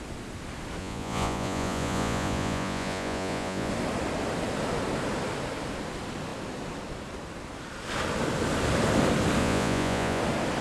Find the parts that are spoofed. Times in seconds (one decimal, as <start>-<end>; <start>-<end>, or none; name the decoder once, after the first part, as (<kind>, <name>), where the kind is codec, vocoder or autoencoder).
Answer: 0.8-3.7 (vocoder, Vocos); 9.4-10.2